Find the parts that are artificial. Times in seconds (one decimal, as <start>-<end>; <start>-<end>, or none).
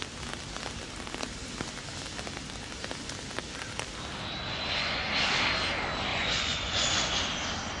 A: 4.5-5.1; 6.1-7.2